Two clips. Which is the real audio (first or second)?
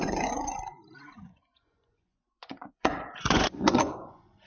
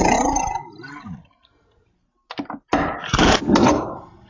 second